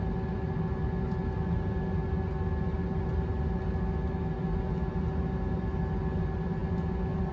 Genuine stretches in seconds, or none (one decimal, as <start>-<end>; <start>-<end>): 0.0-7.3